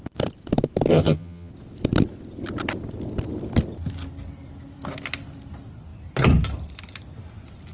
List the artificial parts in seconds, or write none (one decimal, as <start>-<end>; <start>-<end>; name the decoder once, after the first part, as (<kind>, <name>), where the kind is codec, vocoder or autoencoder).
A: 0.9-1.5 (vocoder, HiFi-GAN)